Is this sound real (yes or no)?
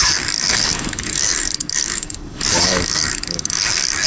no